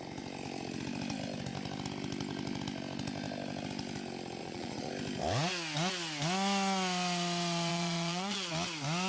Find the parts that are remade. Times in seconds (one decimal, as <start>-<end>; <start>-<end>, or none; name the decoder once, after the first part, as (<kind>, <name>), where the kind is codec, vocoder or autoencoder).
4.4-4.9 (vocoder, Vocos); 7.7-8.5